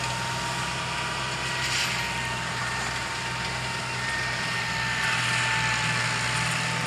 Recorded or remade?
recorded